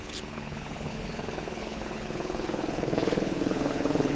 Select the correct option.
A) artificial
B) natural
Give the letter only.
A